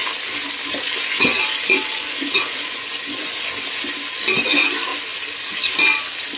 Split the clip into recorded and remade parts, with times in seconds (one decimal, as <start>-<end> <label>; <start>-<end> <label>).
0.0-1.1 recorded; 1.1-3.5 remade; 3.5-6.4 recorded